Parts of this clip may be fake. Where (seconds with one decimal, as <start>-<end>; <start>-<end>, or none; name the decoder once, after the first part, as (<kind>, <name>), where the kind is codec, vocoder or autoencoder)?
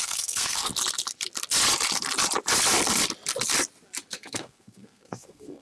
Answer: 0.0-0.7 (codec, SNAC); 4.1-5.6